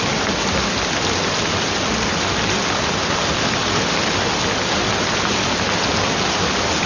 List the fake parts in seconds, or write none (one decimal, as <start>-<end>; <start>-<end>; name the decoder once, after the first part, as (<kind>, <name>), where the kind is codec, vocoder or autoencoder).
none